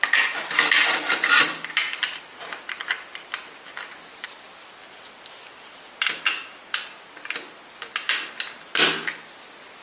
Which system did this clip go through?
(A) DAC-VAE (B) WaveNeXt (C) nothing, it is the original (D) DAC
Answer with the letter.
C